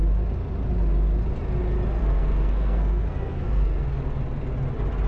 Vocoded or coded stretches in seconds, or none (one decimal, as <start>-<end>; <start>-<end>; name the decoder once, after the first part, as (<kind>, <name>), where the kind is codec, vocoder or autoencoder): 2.0-4.0 (codec, SNAC)